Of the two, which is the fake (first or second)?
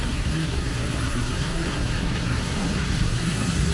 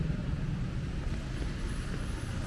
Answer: first